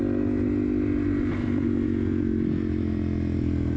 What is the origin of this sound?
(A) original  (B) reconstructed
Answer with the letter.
A